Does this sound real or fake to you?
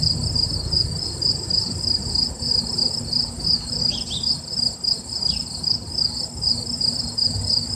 real